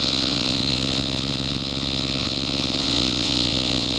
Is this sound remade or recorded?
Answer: remade